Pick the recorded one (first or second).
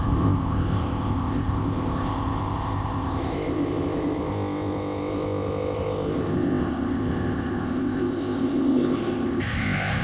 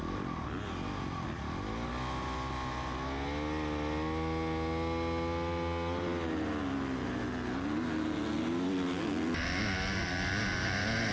second